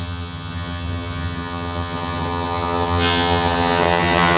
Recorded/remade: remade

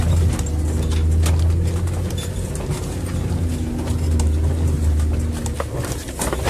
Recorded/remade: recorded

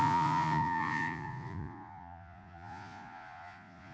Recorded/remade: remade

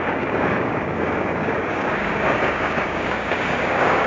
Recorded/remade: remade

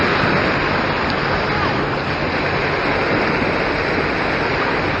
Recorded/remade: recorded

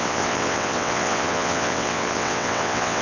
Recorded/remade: remade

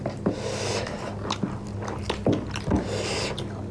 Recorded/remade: recorded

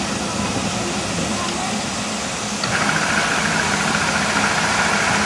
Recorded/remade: recorded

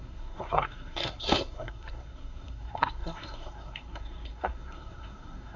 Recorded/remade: remade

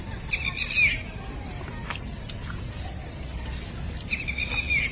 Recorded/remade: recorded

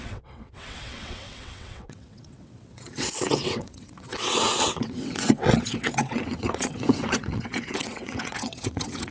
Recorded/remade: remade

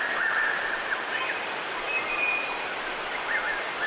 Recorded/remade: recorded